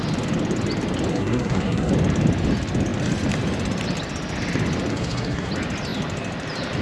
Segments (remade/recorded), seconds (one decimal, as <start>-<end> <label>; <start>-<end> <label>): 0.0-1.1 recorded; 1.1-1.9 remade; 1.9-4.9 recorded; 4.9-5.5 remade; 5.5-6.8 recorded